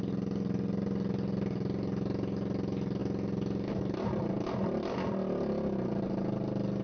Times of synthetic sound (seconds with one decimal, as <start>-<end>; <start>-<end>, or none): none